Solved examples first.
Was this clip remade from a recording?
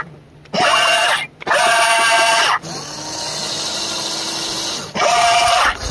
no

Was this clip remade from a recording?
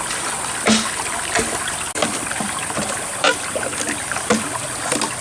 no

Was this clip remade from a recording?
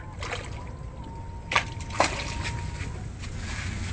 no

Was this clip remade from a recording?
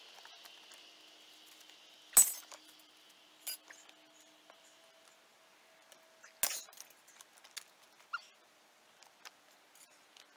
no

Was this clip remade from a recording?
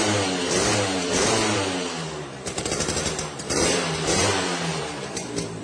yes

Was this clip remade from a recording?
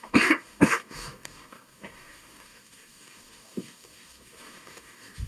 yes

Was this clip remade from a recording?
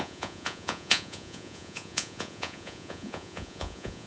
yes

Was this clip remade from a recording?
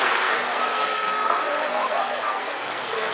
yes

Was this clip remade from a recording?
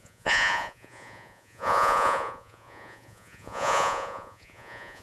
yes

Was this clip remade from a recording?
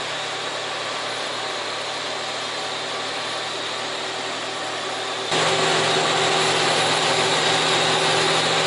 no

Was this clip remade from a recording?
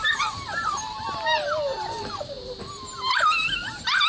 no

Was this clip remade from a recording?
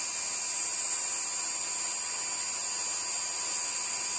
no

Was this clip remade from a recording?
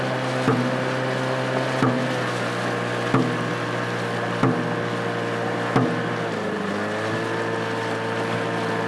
no